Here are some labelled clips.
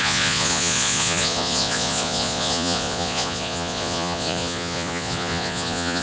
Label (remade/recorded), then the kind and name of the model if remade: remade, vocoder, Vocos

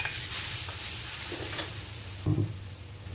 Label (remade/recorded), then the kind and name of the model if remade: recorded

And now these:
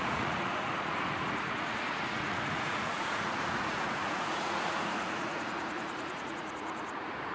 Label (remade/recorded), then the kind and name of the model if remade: remade, vocoder, Vocos